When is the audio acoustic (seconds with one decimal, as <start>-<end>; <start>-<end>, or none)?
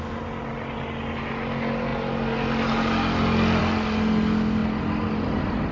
0.0-5.7